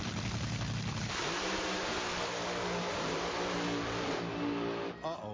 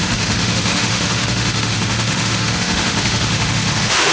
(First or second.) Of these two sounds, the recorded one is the first